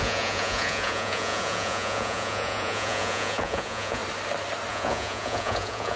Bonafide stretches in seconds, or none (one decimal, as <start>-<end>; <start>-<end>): 4.0-4.7